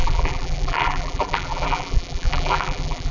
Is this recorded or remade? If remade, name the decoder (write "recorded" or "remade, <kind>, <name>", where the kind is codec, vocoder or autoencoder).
remade, vocoder, BigVGAN v2